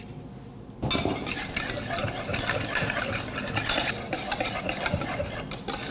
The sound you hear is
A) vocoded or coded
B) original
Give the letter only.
B